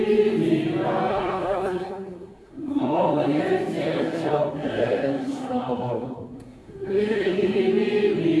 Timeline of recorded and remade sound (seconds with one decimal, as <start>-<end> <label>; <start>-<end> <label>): 0.0-1.1 recorded; 1.1-3.4 remade; 3.4-3.8 recorded; 3.8-7.6 remade; 7.6-8.4 recorded